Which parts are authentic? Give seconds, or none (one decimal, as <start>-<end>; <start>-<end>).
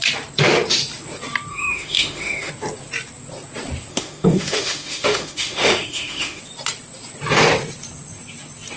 0.0-1.5; 2.5-3.9; 6.4-8.8